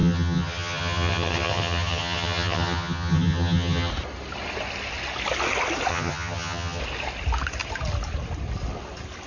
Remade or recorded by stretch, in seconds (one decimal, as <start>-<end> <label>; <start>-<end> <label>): 0.0-3.9 remade; 3.9-5.9 recorded; 5.9-6.8 remade; 6.8-9.3 recorded